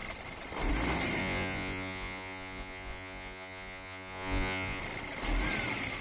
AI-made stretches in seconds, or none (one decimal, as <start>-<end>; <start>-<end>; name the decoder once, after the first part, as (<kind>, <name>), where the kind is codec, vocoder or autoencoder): 1.2-4.8 (vocoder, Vocos)